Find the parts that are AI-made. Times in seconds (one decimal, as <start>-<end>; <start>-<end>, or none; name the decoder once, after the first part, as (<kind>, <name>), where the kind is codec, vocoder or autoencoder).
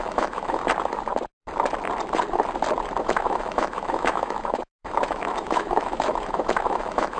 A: 0.0-0.6 (autoencoder, DAC-VAE); 3.0-7.2